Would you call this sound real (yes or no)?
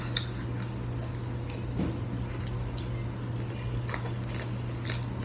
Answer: yes